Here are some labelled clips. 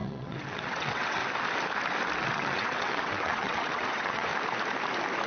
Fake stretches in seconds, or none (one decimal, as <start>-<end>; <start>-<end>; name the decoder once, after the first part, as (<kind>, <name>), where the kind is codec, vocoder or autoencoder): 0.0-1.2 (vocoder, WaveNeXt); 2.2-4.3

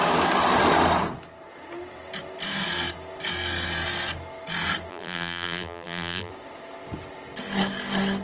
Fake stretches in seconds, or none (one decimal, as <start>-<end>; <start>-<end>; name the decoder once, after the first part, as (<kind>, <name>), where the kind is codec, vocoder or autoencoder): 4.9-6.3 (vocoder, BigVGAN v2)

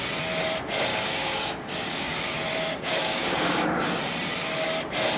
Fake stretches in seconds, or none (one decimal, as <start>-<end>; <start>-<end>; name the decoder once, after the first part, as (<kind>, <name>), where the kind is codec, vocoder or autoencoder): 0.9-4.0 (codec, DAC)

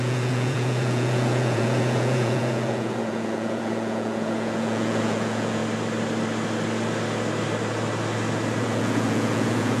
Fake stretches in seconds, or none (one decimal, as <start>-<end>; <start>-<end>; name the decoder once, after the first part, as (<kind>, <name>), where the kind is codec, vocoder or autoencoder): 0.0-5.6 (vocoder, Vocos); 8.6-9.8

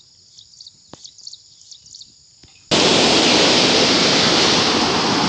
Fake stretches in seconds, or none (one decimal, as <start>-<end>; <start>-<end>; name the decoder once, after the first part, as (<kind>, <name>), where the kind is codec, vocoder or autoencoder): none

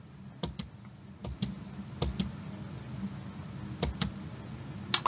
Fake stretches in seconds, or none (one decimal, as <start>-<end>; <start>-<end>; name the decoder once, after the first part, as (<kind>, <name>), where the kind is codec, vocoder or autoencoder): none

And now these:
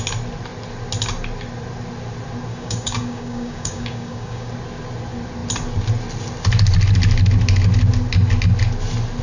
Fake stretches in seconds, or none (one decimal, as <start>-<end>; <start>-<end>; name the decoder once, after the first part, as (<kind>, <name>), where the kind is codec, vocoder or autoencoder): 2.5-4.5 (codec, DAC)